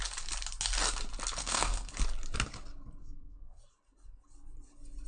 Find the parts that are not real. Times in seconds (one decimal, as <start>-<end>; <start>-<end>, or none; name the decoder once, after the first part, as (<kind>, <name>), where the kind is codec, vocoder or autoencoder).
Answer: 1.4-1.9 (codec, SNAC); 3.0-3.6